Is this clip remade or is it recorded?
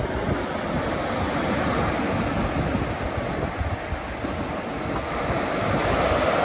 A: recorded